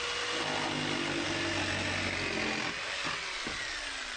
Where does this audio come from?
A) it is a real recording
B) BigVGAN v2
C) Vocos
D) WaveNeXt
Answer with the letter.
A